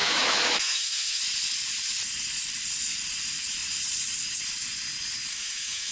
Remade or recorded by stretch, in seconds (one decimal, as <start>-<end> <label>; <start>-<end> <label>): 0.0-1.2 remade; 1.2-5.3 recorded; 5.3-5.9 remade